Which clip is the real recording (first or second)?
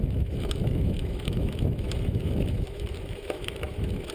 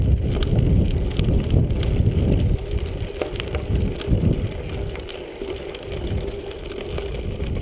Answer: second